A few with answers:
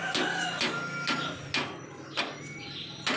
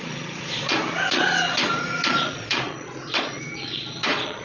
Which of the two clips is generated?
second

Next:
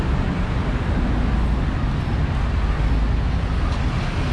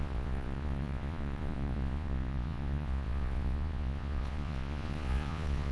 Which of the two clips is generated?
second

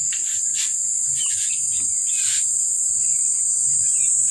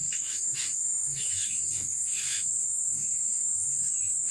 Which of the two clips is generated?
second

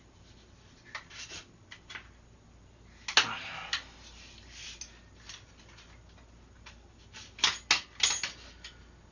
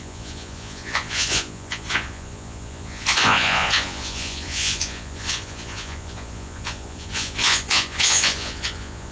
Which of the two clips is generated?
second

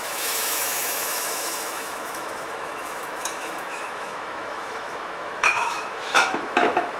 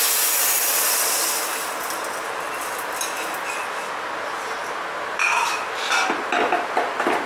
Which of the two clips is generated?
first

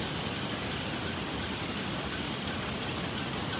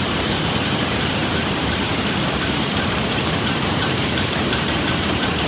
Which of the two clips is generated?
second